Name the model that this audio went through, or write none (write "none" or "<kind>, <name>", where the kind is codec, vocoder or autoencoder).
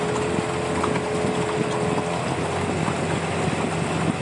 none